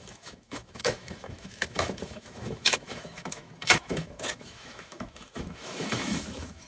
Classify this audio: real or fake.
fake